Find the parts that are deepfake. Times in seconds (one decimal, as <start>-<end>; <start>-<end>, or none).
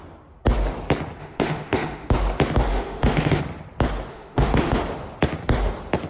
1.2-2.1; 2.7-3.4; 4.1-4.8